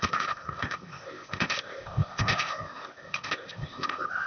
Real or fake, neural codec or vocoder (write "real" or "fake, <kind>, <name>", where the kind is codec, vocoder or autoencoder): fake, codec, ZipCodec